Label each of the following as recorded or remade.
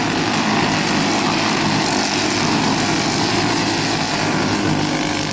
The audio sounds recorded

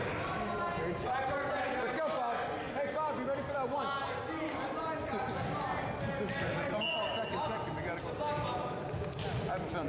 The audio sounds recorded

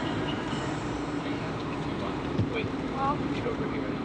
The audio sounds remade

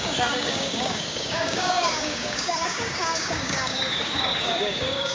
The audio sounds remade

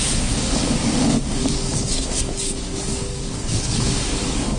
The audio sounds remade